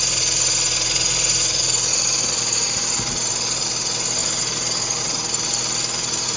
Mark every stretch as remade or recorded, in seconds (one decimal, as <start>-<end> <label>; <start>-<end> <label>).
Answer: 0.0-6.4 recorded